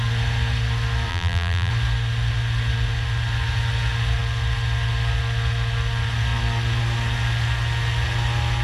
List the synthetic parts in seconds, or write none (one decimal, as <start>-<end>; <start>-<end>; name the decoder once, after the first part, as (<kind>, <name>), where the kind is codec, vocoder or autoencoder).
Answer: 1.1-1.7 (vocoder, BigVGAN v2)